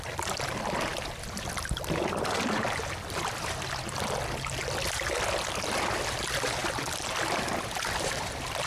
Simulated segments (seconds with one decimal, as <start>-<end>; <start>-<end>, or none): none